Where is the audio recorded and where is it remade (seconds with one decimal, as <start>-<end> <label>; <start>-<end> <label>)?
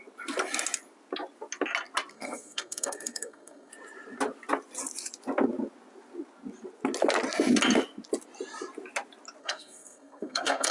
0.0-2.1 recorded; 2.1-3.7 remade; 3.7-9.4 recorded; 9.4-10.7 remade